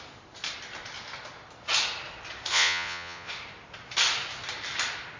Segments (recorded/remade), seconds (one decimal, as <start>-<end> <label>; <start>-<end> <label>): 0.0-2.5 recorded; 2.5-3.3 remade; 3.3-5.2 recorded